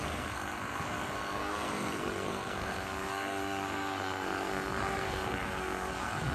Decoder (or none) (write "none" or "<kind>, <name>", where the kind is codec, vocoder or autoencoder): codec, SNAC